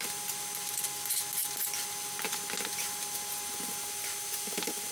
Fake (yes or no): no